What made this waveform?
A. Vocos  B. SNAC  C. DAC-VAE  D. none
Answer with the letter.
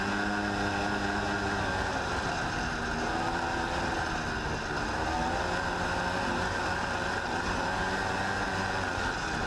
D